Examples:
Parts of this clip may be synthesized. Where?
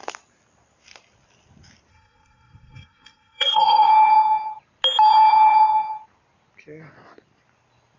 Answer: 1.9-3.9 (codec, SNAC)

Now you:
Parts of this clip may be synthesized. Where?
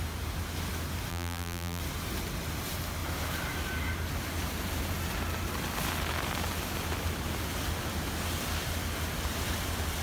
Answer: 1.1-1.8 (vocoder, BigVGAN v2)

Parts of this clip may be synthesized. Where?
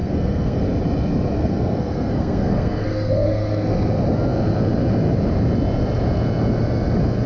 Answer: 0.0-0.7 (codec, SNAC); 1.4-3.7